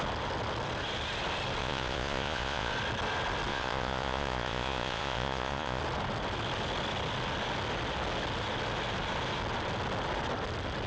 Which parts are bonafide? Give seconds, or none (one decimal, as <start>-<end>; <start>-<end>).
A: 0.0-1.6; 2.7-3.5; 5.8-10.9